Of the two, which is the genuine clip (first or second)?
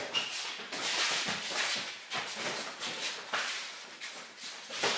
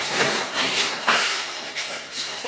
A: first